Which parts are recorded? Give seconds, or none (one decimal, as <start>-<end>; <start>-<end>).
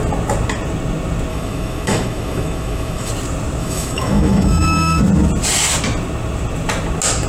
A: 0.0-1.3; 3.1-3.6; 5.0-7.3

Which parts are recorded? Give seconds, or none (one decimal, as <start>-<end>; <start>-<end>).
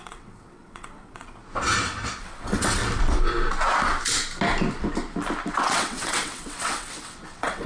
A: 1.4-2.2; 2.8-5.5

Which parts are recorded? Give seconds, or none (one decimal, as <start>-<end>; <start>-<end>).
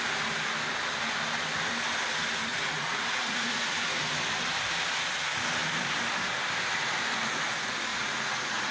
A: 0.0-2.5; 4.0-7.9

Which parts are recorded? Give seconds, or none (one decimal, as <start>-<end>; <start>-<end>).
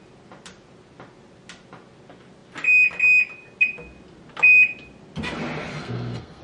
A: 0.0-5.7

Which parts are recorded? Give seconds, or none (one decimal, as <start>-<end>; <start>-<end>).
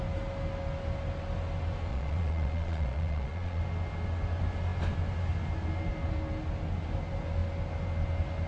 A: 0.0-1.9; 3.6-8.5